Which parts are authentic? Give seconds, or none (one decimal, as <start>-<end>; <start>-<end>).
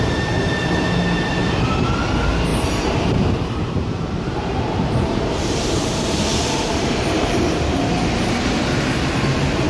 0.0-1.4; 1.9-2.5; 7.4-9.7